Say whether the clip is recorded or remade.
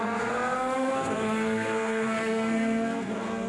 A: remade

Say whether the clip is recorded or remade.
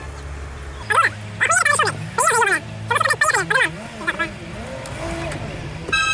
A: recorded